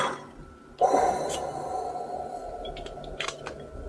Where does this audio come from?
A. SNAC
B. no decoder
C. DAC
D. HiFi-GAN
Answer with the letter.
B